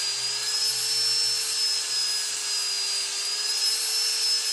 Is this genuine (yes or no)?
yes